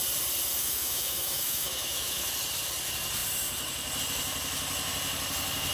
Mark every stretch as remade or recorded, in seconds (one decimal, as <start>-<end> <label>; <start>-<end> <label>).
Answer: 0.0-0.6 recorded; 0.6-2.3 remade; 2.3-5.7 recorded